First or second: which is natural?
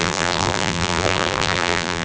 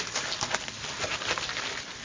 second